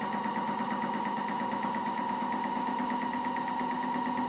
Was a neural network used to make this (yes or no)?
no